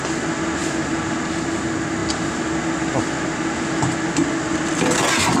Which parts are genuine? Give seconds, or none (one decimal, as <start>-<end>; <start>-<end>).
0.0-5.4

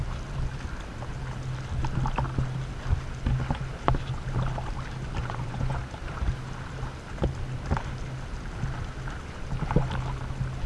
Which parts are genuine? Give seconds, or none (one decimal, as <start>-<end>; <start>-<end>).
0.0-5.2; 5.8-10.7

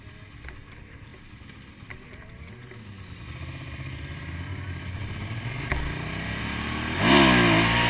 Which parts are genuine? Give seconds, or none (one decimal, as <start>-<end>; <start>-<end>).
0.0-7.9